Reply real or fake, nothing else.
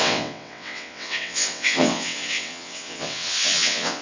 fake